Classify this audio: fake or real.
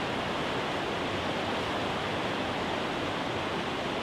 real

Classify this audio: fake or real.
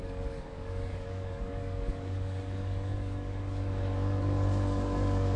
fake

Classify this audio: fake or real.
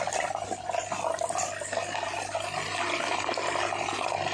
fake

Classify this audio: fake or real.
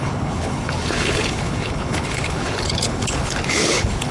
fake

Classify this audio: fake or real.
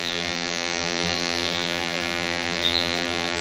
fake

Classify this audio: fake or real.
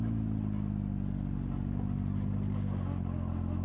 real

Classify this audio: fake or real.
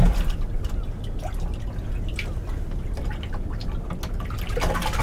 real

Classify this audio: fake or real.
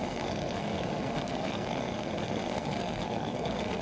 fake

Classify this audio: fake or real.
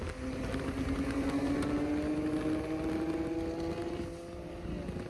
real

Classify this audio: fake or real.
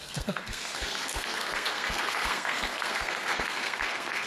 fake